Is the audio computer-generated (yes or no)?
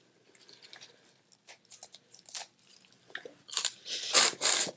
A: no